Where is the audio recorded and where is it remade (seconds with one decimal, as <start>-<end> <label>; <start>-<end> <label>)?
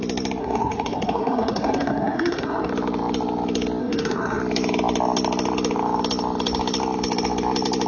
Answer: 0.0-0.4 recorded; 0.4-2.7 remade; 2.7-3.8 recorded; 3.8-4.4 remade; 4.4-7.9 recorded